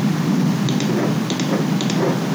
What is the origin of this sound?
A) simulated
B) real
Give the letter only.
B